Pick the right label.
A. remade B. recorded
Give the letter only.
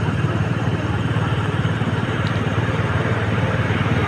A